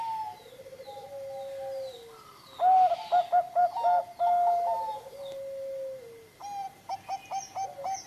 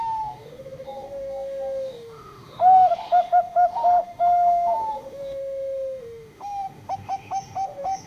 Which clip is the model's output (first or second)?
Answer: second